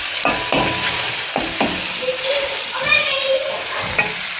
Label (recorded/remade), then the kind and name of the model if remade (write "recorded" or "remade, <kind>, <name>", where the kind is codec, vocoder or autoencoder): remade, vocoder, BigVGAN v2